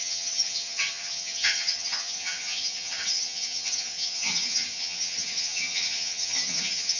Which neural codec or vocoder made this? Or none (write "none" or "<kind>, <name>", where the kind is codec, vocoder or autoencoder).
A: vocoder, HiFi-GAN